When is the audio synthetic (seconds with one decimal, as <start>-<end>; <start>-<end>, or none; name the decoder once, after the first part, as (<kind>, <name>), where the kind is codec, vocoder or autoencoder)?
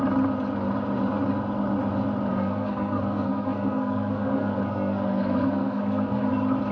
2.3-6.3 (codec, SNAC)